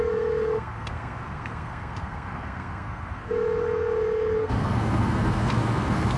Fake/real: fake